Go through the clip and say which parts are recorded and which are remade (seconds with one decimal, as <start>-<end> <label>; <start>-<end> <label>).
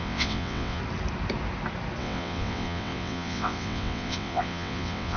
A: 0.0-0.8 remade; 0.8-2.0 recorded; 2.0-5.2 remade